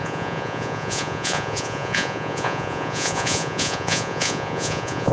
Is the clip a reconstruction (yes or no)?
yes